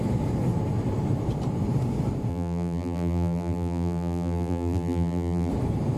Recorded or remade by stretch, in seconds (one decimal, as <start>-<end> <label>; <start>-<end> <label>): 0.0-2.3 recorded; 2.3-5.5 remade; 5.5-6.0 recorded